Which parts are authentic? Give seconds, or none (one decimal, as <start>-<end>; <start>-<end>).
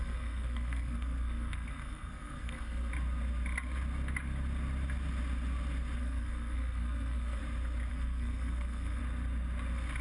2.9-6.0; 7.4-7.9; 9.0-10.0